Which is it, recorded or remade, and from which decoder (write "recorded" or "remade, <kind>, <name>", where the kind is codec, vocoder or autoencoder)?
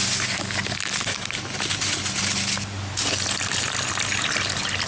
recorded